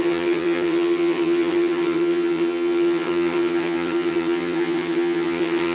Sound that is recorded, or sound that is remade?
remade